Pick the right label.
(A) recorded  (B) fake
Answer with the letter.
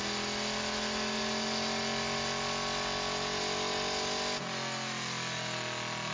A